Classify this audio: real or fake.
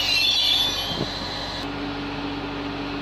real